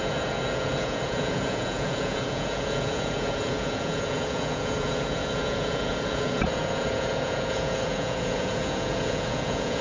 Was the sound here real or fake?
fake